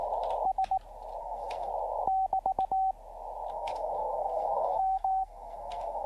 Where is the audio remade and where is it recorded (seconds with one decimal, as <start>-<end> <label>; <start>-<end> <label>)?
0.0-1.2 recorded; 1.2-1.7 remade; 1.7-3.5 recorded; 3.5-6.1 remade